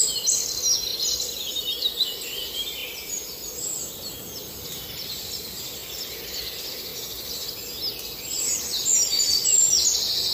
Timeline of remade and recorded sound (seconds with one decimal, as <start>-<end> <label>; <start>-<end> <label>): 0.0-0.9 remade; 0.9-1.5 recorded; 1.5-6.9 remade; 6.9-9.2 recorded; 9.2-10.3 remade

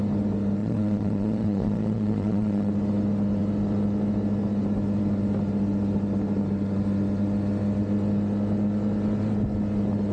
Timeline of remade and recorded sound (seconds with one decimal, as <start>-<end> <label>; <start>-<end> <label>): 0.0-0.6 recorded; 0.6-2.7 remade; 2.7-10.1 recorded

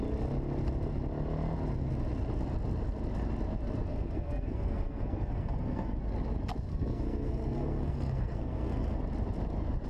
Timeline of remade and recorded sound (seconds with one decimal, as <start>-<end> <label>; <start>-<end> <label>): 0.0-3.9 recorded; 3.9-6.0 remade; 6.0-6.7 recorded; 6.7-9.0 remade; 9.0-9.9 recorded

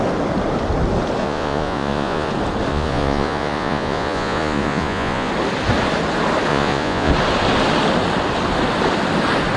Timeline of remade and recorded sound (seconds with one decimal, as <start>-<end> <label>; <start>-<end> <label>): 0.0-1.2 recorded; 1.2-2.3 remade; 2.3-2.7 recorded; 2.7-5.3 remade; 5.3-6.5 recorded; 6.5-7.1 remade; 7.1-9.6 recorded

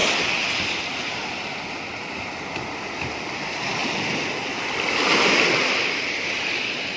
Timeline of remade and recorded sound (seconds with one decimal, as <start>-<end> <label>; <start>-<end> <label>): 0.0-3.8 recorded; 3.8-4.5 remade; 4.5-7.0 recorded

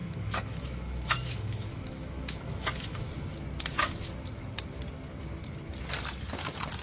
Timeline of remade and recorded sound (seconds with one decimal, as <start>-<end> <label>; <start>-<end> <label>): 0.0-3.1 remade; 3.1-6.8 recorded